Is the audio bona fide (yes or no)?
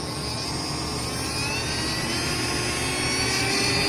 yes